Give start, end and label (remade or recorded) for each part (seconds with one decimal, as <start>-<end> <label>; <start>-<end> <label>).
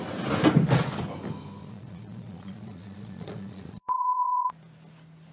0.0-1.6 recorded; 1.6-4.5 remade; 4.5-5.3 recorded